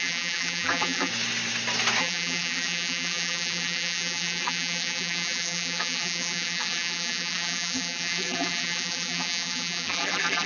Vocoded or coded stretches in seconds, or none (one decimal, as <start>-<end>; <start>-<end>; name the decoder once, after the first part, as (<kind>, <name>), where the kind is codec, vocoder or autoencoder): 0.0-1.1 (vocoder, BigVGAN v2); 2.0-10.5